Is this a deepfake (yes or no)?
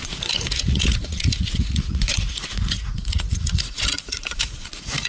yes